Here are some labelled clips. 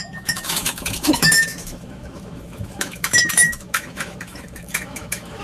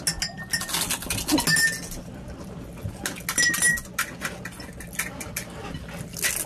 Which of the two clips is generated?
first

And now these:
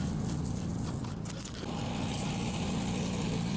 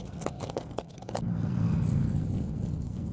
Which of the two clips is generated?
second